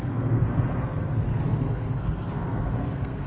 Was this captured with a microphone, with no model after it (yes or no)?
no